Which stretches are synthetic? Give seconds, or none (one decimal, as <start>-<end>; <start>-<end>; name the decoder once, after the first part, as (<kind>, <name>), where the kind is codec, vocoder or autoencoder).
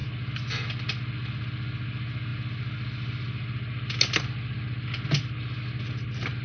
none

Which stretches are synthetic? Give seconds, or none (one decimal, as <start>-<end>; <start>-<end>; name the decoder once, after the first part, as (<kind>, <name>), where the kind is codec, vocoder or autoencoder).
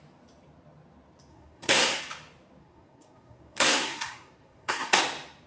1.3-2.0 (codec, SNAC); 2.6-5.0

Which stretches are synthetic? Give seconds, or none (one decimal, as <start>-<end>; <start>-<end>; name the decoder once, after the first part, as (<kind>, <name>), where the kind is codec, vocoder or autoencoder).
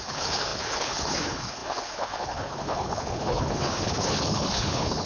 0.0-5.1 (codec, HILCodec)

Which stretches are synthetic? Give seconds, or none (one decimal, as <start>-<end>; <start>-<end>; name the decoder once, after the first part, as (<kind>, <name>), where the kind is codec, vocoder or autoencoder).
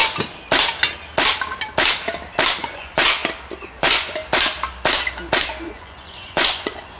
2.6-3.2 (vocoder, Vocos); 3.8-4.2; 5.7-7.0